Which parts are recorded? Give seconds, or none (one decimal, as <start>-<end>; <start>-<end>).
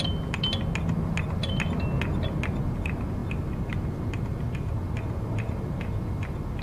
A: 0.0-6.6